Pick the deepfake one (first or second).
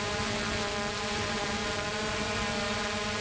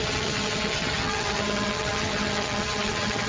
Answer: second